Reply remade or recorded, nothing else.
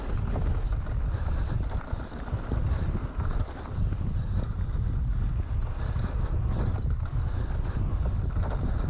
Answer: recorded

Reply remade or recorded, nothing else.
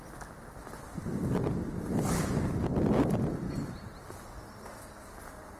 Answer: recorded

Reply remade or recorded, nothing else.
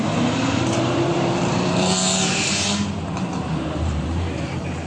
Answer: remade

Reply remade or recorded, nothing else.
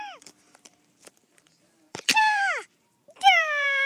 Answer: remade